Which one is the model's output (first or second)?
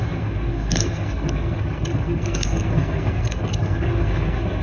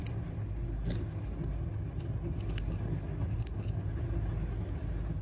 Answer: first